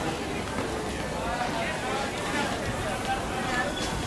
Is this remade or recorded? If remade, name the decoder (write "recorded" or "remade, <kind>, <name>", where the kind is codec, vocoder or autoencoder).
recorded